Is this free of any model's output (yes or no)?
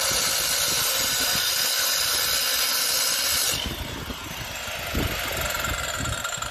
yes